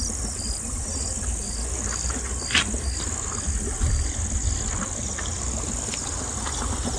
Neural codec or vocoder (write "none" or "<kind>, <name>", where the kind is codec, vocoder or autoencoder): none